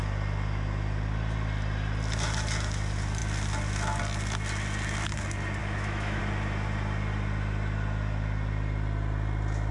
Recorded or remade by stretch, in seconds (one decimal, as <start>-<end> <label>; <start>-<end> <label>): 0.0-5.6 recorded; 5.6-6.2 remade; 6.2-9.7 recorded